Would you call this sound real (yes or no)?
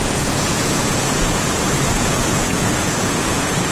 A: no